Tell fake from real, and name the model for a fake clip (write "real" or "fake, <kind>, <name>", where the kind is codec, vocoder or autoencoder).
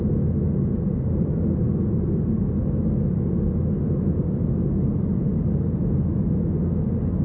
real